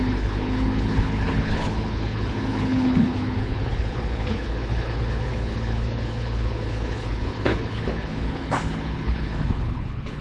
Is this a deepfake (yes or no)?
yes